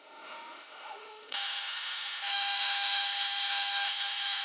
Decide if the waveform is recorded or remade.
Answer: remade